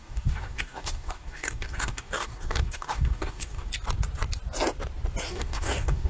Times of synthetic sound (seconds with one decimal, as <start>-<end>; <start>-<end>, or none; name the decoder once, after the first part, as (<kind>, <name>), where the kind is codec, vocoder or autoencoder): 0.0-3.7 (codec, DAC); 5.3-6.1